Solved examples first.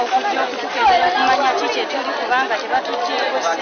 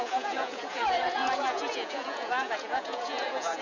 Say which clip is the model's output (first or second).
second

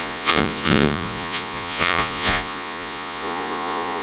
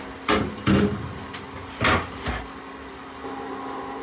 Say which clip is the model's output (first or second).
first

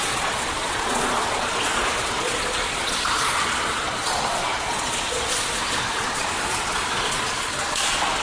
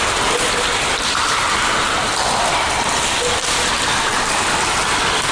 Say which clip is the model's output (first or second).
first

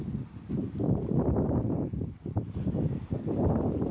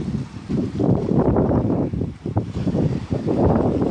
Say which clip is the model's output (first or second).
second